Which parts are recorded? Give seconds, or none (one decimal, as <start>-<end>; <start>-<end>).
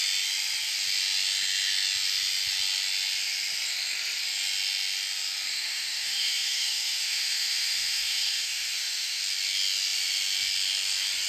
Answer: 0.0-5.5; 9.2-11.3